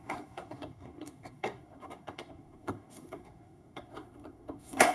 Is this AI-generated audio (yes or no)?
yes